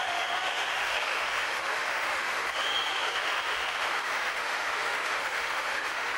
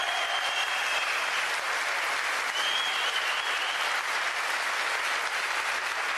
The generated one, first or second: first